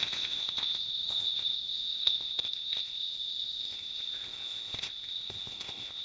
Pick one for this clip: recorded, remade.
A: remade